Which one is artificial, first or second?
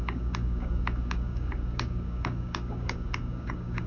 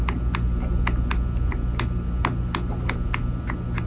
first